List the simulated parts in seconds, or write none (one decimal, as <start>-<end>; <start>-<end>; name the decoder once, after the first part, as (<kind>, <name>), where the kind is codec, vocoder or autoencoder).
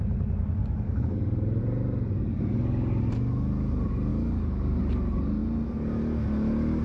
0.6-1.6 (codec, DAC); 2.3-3.0; 4.1-4.8